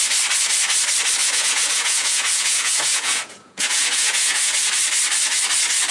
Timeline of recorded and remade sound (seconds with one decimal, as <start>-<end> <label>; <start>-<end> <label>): 0.0-1.2 recorded; 1.2-4.7 remade; 4.7-5.9 recorded